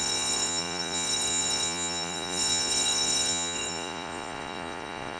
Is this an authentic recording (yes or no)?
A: no